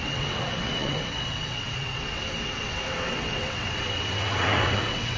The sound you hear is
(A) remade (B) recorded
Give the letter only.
A